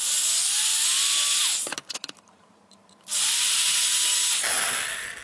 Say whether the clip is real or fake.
real